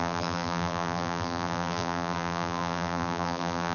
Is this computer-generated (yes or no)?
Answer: yes